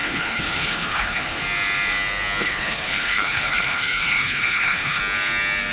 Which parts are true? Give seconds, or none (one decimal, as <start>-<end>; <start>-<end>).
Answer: 1.4-2.4; 5.0-5.7